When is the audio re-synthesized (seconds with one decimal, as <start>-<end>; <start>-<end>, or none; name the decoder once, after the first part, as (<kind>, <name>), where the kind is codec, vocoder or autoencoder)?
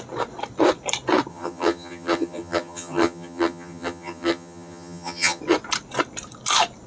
1.3-5.4 (vocoder, HiFi-GAN)